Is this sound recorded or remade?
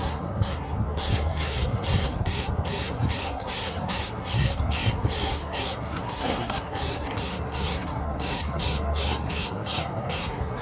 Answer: remade